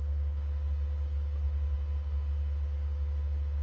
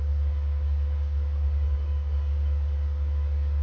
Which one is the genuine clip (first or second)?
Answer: first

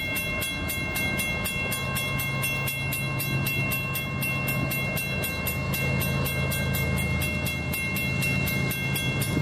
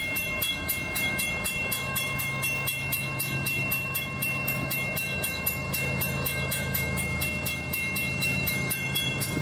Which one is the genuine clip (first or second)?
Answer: first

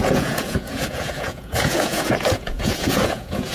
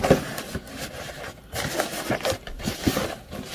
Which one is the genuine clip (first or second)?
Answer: second